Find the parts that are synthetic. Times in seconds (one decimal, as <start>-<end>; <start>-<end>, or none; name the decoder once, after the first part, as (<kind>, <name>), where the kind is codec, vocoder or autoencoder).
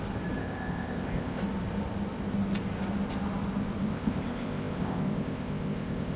0.4-1.4 (codec, ZipCodec); 3.8-6.2